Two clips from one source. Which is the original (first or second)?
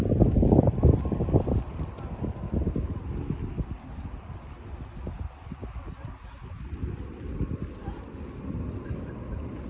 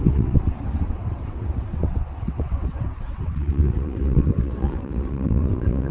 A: first